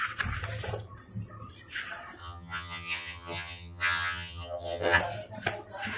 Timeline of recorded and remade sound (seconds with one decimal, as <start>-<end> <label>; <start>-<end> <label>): 0.0-2.2 recorded; 2.2-5.0 remade; 5.0-6.0 recorded